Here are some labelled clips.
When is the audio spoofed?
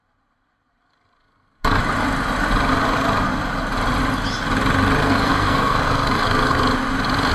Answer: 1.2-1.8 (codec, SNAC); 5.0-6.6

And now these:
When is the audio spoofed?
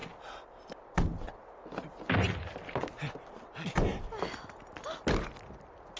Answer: none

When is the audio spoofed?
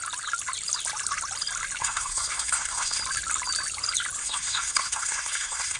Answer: 1.8-3.0 (codec, SNAC); 4.2-5.8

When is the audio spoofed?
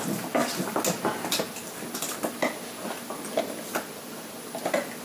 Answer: none